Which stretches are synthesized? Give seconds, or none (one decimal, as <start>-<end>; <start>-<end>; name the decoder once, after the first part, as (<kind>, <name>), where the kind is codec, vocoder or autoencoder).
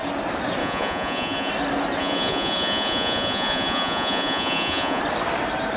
0.6-1.5 (vocoder, Vocos); 2.0-5.0